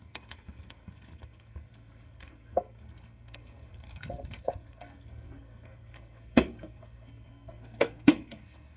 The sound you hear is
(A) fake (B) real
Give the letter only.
A